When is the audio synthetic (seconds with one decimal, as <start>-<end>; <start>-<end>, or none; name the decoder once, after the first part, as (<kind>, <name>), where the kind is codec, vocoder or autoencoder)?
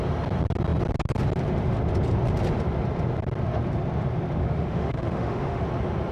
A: 4.4-5.6 (autoencoder, DAC-VAE)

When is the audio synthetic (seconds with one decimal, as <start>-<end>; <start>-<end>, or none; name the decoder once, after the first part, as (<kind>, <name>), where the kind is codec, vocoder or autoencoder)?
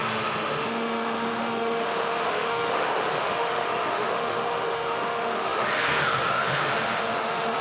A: 0.0-7.6 (autoencoder, DAC-VAE)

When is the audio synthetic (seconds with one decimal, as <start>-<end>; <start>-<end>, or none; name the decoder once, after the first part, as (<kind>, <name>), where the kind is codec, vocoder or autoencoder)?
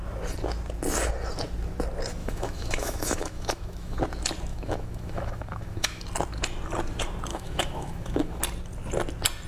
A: 2.2-4.0 (autoencoder, DAC-VAE); 4.5-6.0; 7.3-8.4